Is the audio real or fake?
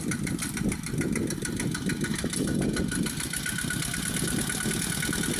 real